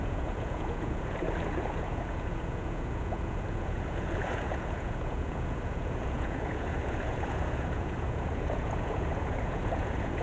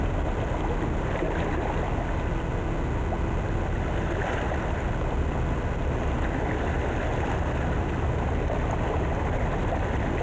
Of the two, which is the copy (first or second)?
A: first